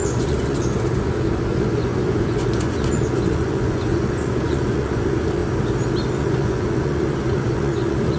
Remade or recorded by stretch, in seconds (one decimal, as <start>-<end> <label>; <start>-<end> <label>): 0.0-5.4 remade; 5.4-6.1 recorded; 6.1-8.2 remade